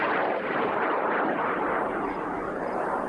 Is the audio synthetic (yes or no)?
yes